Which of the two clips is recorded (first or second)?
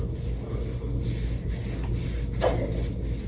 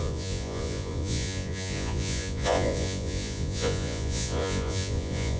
first